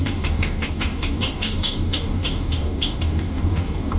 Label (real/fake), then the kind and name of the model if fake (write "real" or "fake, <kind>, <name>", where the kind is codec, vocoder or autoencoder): fake, codec, DAC